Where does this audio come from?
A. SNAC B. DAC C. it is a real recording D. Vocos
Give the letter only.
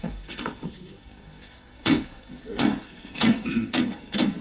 A